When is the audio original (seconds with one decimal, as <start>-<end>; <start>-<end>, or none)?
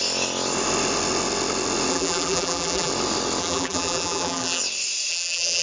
0.0-1.9; 2.9-3.4; 4.6-5.1